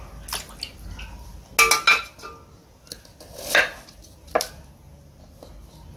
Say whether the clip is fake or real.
real